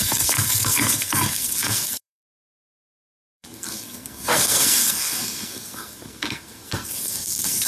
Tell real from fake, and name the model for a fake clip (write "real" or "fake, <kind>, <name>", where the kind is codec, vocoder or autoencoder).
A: fake, codec, SNAC